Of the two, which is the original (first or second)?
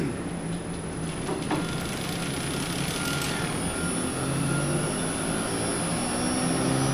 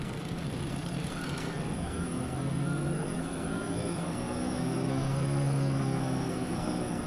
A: first